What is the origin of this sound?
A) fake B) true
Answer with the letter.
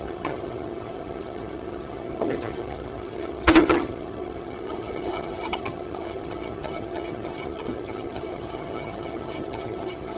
A